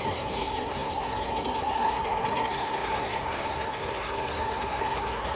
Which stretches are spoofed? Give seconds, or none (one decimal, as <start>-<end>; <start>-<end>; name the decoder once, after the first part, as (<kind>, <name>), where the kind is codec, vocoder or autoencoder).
0.0-5.4 (codec, SNAC)